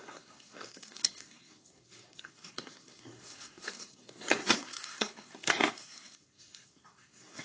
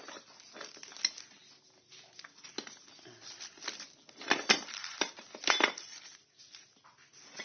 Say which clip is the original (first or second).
second